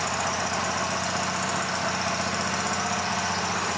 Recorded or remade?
recorded